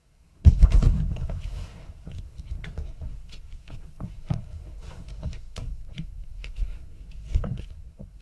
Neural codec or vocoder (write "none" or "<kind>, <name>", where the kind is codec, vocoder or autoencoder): codec, SNAC